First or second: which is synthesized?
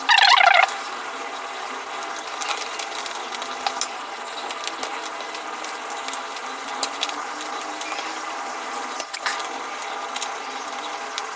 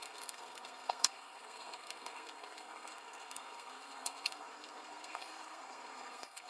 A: second